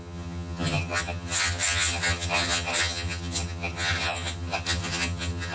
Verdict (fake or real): fake